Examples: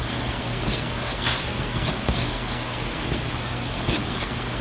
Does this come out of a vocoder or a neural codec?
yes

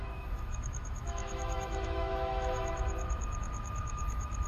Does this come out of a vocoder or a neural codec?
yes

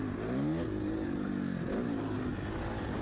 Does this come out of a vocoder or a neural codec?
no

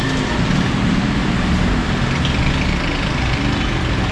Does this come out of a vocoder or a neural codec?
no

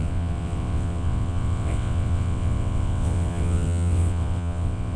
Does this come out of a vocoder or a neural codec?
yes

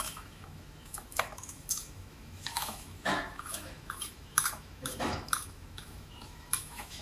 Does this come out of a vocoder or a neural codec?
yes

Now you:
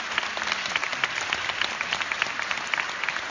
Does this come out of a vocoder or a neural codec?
no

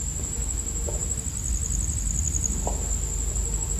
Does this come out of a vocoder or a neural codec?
no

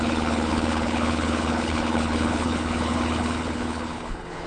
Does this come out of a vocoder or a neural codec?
yes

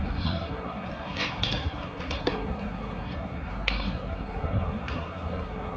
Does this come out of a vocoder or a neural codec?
yes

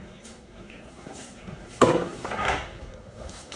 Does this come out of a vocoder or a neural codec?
yes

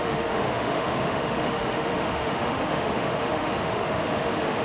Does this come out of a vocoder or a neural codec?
yes